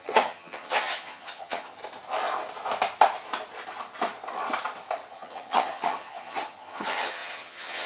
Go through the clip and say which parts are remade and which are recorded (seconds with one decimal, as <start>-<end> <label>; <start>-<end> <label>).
0.0-1.8 remade; 1.8-5.1 recorded; 5.1-7.9 remade